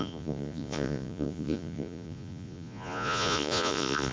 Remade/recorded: remade